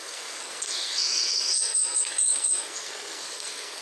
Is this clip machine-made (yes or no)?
yes